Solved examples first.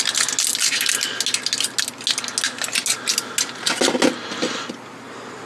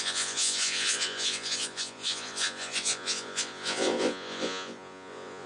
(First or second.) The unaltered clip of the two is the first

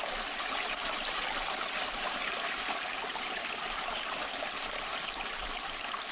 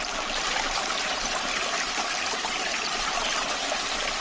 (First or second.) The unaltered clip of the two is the first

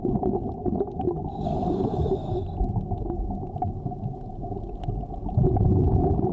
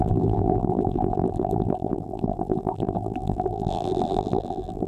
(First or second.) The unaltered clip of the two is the first